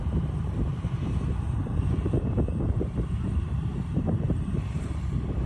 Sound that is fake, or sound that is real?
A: fake